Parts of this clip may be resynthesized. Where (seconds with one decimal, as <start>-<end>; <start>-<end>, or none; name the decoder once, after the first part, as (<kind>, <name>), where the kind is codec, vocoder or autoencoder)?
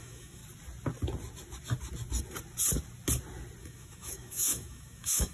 0.0-0.4 (autoencoder, DAC-VAE); 3.6-5.3